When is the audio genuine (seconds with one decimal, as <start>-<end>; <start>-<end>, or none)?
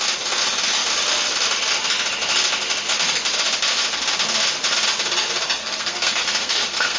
0.0-5.6